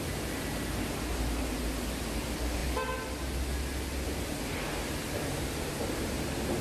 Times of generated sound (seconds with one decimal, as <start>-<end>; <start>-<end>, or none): none